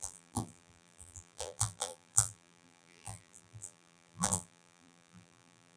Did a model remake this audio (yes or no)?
yes